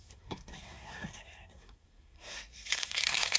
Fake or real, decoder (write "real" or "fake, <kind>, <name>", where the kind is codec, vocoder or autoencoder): fake, codec, SNAC